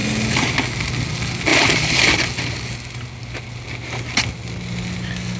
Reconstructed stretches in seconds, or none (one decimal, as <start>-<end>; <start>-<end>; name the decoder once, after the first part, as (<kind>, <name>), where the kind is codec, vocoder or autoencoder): 1.5-2.2 (vocoder, BigVGAN v2)